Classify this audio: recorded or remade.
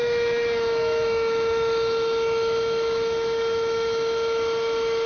remade